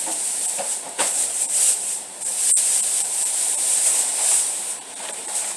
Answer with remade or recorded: remade